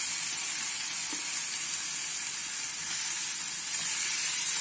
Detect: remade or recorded recorded